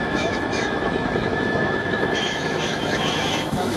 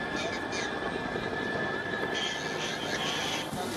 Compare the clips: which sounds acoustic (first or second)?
second